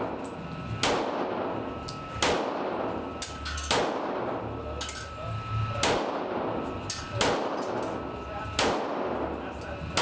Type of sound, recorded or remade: recorded